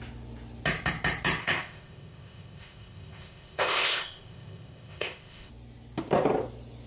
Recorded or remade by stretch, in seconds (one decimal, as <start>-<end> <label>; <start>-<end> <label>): 0.0-1.4 recorded; 1.4-5.5 remade; 5.5-6.9 recorded